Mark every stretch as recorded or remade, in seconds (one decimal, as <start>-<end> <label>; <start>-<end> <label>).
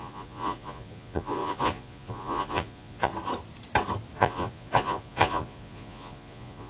0.0-3.1 remade; 3.1-4.2 recorded; 4.2-6.7 remade